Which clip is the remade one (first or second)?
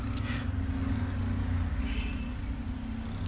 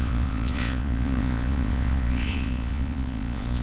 second